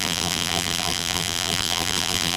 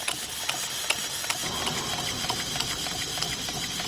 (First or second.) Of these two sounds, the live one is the second